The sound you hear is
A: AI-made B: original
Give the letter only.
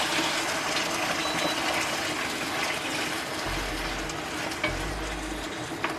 B